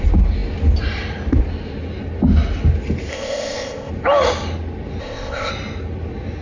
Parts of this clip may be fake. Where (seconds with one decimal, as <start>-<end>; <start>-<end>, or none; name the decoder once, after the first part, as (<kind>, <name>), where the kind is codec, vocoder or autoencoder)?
3.1-3.9 (codec, ZipCodec); 5.0-5.5